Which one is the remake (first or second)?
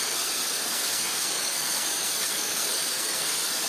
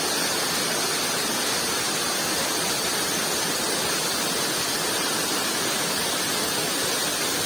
first